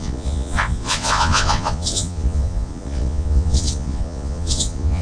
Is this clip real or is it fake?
fake